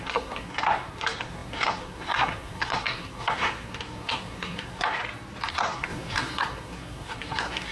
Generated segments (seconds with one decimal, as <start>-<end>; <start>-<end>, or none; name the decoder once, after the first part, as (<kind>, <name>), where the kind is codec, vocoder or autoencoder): 0.0-5.0 (codec, SNAC); 5.5-7.7